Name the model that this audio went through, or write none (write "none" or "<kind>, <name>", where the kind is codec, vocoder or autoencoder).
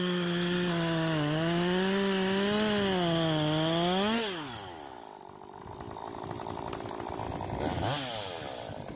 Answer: none